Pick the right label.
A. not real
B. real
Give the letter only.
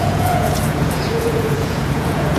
A